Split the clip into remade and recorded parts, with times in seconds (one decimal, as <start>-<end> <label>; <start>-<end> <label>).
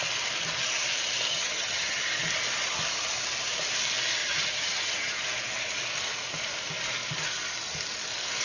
0.0-1.3 recorded; 1.3-2.0 remade; 2.0-4.2 recorded; 4.2-5.2 remade; 5.2-8.4 recorded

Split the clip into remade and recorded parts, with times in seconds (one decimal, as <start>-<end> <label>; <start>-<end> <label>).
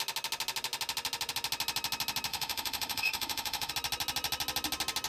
0.0-2.3 recorded; 2.3-3.7 remade; 3.7-5.1 recorded